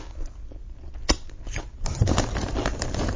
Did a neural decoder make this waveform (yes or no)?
no